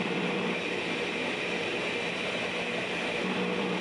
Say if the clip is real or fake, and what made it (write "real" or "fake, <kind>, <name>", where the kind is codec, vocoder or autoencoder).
fake, vocoder, BigVGAN v2